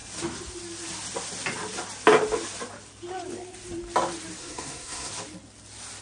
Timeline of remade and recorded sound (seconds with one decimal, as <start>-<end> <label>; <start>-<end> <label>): 0.0-4.4 recorded; 4.4-5.1 remade; 5.1-6.0 recorded